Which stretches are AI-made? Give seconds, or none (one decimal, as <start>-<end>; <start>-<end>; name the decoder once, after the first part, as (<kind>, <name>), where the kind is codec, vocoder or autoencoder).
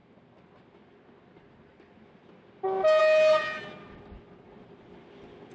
none